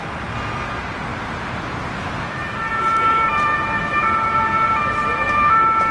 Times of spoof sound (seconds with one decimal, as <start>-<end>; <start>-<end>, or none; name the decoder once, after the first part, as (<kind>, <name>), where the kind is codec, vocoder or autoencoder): none